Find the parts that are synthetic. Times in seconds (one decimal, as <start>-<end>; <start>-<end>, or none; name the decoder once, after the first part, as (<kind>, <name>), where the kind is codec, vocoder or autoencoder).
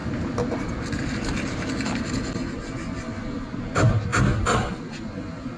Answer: none